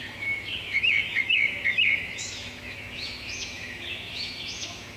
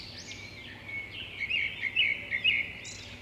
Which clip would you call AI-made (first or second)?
first